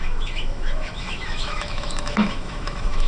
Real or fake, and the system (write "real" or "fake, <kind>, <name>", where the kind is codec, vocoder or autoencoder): fake, autoencoder, DAC-VAE